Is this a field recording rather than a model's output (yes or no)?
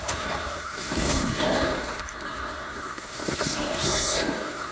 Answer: no